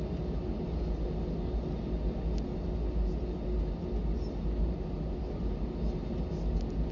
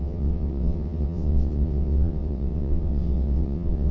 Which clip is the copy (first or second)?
second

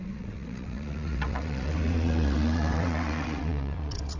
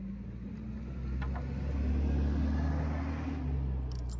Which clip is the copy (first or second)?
first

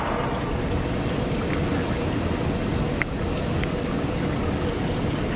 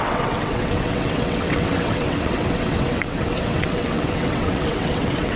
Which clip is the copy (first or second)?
second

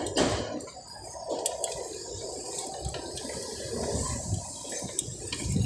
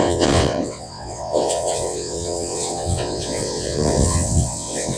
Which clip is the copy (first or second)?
second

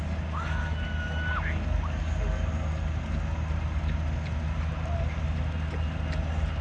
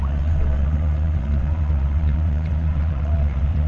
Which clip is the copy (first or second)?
second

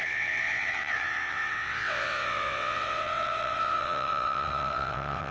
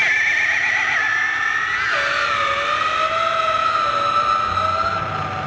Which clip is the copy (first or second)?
first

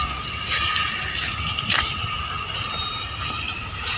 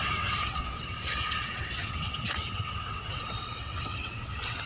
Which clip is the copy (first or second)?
second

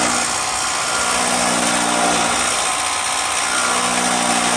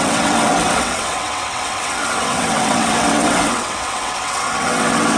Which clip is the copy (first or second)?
second